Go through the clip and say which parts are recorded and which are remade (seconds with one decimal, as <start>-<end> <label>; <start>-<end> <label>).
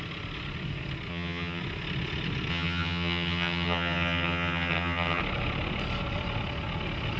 0.0-1.1 recorded; 1.1-1.6 remade; 1.6-2.5 recorded; 2.5-5.2 remade; 5.2-7.2 recorded